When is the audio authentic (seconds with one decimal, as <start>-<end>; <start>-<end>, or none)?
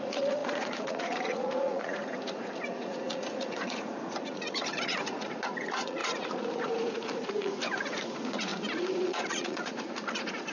none